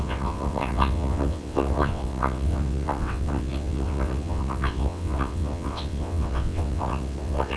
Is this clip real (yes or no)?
no